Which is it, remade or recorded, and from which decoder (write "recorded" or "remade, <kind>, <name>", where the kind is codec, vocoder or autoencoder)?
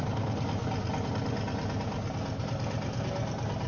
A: recorded